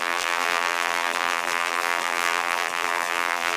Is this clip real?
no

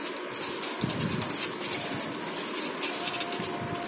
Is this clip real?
yes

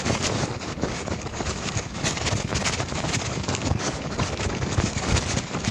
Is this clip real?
no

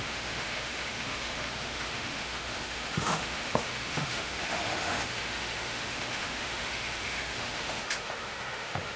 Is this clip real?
no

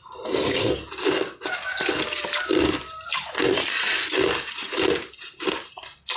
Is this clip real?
yes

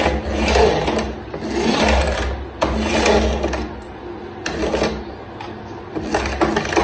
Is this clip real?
yes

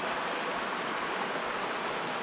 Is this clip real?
yes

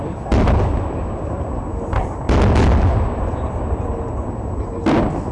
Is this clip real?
yes